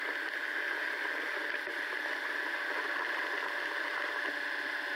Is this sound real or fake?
real